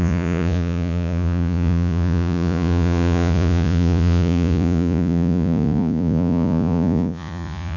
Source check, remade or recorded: remade